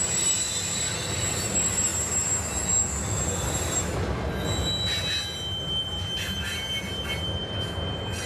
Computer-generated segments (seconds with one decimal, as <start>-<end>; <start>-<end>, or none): none